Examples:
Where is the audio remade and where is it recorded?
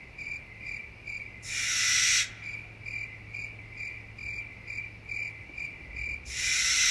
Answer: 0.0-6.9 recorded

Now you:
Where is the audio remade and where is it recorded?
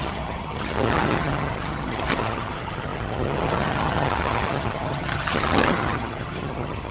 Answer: 0.0-6.9 remade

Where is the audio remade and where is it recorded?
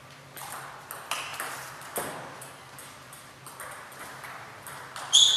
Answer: 0.0-5.4 recorded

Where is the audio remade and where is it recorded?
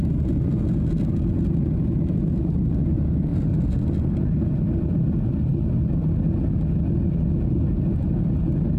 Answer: 0.0-3.3 recorded; 3.3-4.8 remade; 4.8-8.8 recorded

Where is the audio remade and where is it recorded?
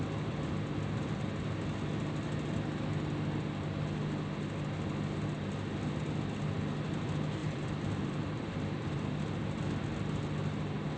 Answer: 0.0-7.4 recorded; 7.4-9.1 remade; 9.1-11.0 recorded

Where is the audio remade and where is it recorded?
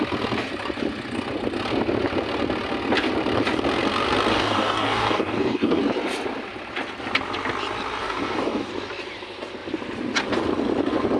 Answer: 0.0-4.3 recorded; 4.3-5.8 remade; 5.8-8.0 recorded; 8.0-8.7 remade; 8.7-11.2 recorded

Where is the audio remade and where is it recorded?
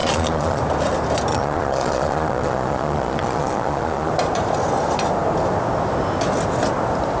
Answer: 0.0-0.6 remade; 0.6-1.3 recorded; 1.3-4.1 remade; 4.1-7.2 recorded